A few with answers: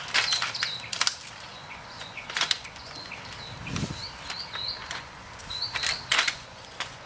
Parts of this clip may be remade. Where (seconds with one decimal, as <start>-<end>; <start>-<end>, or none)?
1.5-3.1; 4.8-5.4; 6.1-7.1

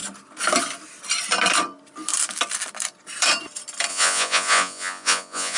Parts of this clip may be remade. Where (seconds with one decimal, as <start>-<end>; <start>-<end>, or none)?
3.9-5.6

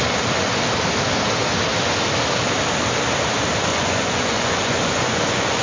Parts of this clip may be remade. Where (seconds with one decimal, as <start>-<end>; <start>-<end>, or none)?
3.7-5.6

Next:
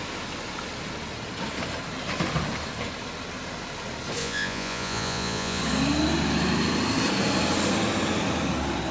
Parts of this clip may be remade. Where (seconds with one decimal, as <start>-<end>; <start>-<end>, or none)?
4.2-5.6

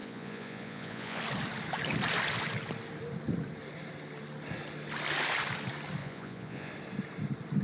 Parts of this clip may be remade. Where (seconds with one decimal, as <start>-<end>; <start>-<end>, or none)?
0.0-1.2; 6.0-6.7

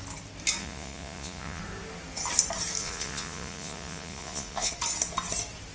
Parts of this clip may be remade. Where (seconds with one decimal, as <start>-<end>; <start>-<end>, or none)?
0.6-1.6; 2.8-4.7

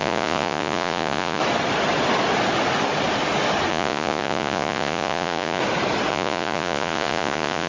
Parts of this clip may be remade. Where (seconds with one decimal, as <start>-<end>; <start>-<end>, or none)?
0.0-1.4; 3.7-5.6; 6.1-7.7

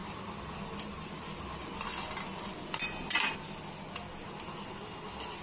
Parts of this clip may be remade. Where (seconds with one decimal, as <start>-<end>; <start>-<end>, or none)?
none